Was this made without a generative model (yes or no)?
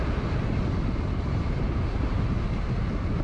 yes